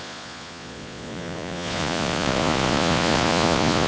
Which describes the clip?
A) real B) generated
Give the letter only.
B